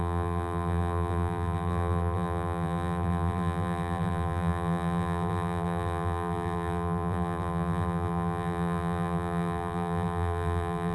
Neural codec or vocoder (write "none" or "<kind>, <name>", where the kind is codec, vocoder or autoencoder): vocoder, BigVGAN v2